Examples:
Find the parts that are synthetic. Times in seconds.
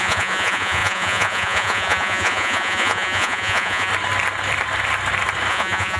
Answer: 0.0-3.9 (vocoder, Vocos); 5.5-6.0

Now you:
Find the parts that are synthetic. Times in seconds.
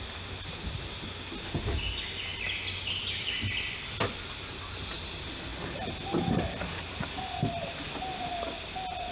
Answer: none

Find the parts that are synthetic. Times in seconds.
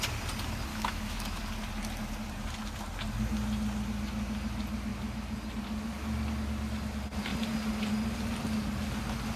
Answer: 0.7-1.4 (autoencoder, DAC-VAE)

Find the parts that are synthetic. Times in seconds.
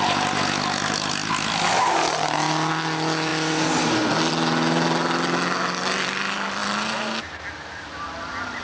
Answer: none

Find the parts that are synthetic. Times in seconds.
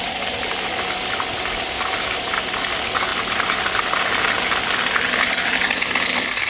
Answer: none